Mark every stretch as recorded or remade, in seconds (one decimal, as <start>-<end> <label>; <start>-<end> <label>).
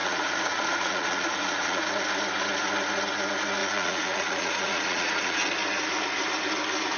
0.0-1.9 remade; 1.9-3.6 recorded; 3.6-5.5 remade; 5.5-7.0 recorded